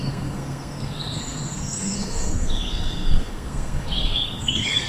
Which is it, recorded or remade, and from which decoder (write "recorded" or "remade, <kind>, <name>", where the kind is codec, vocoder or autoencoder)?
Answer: remade, codec, SNAC